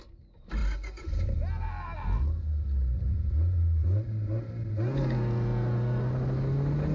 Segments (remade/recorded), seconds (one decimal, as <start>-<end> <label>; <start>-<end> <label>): 0.0-6.9 recorded